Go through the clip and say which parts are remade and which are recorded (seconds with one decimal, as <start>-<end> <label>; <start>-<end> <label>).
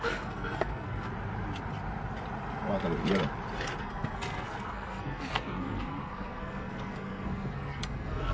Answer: 0.0-1.1 remade; 1.1-3.8 recorded; 3.8-8.3 remade